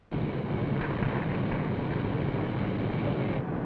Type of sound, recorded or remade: recorded